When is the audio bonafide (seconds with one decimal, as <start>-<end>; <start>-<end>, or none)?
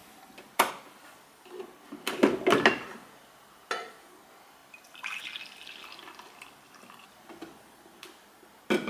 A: 0.7-8.9